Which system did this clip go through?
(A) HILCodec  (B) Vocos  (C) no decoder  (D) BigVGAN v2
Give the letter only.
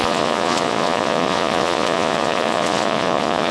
B